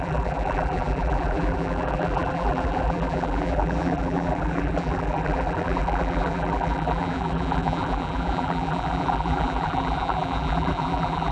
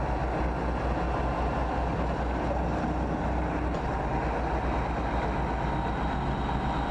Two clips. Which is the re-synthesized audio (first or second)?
first